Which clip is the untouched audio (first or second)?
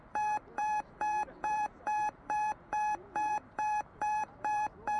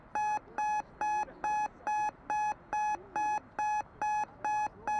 second